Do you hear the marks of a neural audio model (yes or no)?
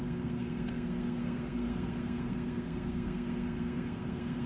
yes